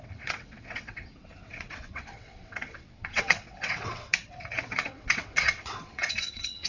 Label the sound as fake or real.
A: fake